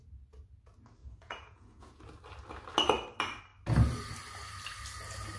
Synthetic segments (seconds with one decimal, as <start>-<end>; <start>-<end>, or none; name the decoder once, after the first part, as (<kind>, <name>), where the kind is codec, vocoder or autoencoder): 1.0-2.0 (vocoder, Vocos)